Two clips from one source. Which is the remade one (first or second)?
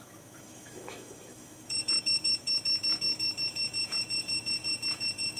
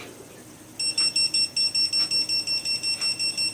first